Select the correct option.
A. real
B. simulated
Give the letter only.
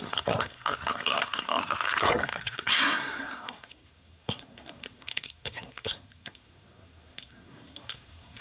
B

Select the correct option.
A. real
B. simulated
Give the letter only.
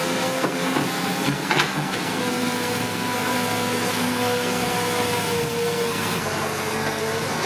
B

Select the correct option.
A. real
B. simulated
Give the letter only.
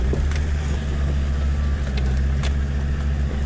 A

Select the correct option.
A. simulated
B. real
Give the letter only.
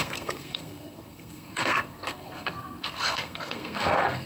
A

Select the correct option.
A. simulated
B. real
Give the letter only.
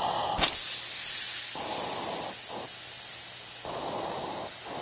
B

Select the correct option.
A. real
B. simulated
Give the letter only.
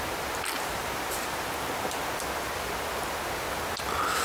A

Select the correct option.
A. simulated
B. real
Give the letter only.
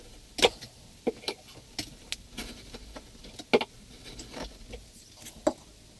B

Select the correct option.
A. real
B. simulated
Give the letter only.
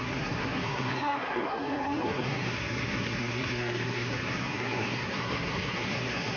B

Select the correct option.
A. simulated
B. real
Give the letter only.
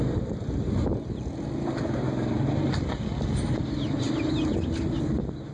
B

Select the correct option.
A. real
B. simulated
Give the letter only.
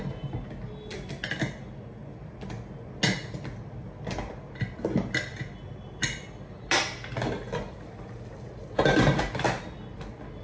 A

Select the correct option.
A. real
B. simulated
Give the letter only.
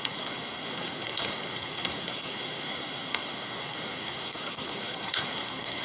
B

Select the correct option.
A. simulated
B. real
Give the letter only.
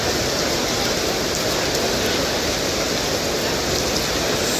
B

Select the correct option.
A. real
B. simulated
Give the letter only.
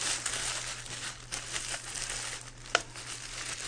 A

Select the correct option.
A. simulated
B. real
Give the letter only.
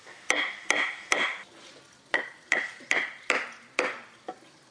B